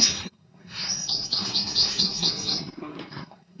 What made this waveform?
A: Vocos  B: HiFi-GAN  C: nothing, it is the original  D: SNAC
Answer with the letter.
D